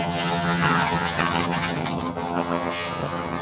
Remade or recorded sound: remade